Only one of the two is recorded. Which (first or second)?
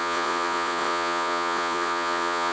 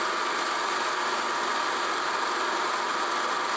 second